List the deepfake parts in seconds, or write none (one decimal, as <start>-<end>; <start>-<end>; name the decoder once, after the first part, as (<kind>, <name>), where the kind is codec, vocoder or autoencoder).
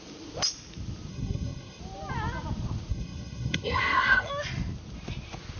1.1-1.8 (codec, SNAC); 2.9-4.3